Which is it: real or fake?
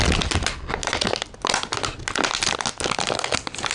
real